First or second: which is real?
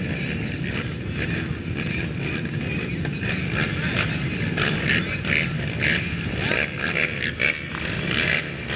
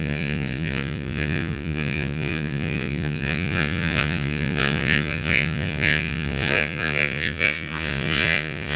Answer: first